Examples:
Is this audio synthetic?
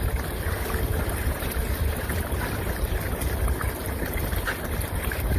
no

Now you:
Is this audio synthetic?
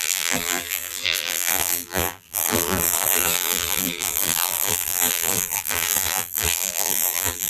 yes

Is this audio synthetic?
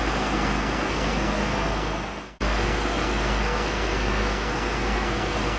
yes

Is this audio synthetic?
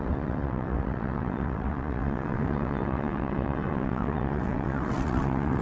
yes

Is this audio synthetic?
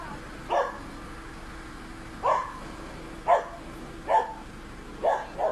no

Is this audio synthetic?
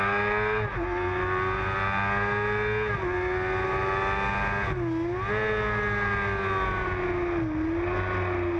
no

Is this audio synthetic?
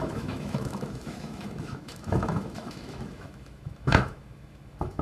yes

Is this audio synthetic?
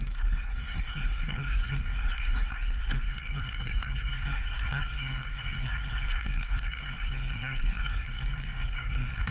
yes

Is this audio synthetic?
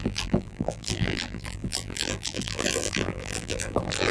yes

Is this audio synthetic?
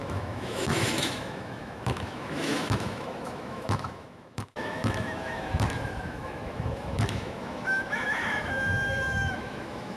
yes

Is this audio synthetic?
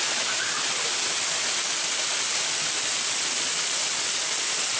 no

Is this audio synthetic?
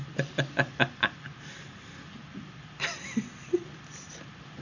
no